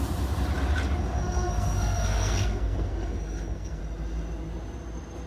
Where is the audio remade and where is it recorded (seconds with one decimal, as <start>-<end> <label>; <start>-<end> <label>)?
0.0-1.1 recorded; 1.1-3.8 remade; 3.8-5.3 recorded

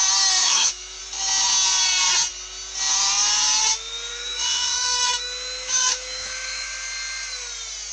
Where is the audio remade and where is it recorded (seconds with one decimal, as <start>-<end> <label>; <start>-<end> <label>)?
0.0-0.4 recorded; 0.4-1.0 remade; 1.0-4.1 recorded; 4.1-6.7 remade; 6.7-7.9 recorded